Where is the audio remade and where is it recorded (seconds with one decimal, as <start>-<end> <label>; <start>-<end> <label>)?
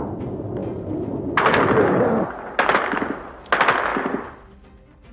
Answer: 0.0-0.6 recorded; 0.6-2.2 remade; 2.2-5.1 recorded